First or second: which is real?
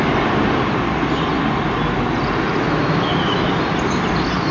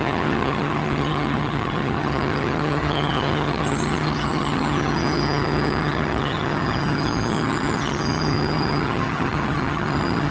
first